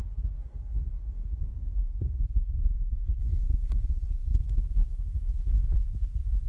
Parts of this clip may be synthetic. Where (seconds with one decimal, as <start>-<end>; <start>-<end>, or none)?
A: 0.0-1.4; 1.8-5.7